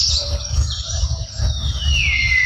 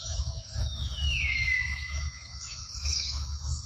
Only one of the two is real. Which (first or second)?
first